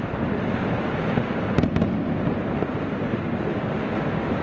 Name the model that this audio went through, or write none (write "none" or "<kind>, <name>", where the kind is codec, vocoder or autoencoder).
none